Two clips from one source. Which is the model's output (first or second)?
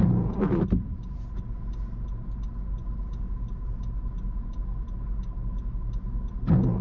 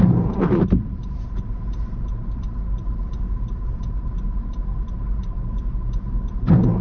second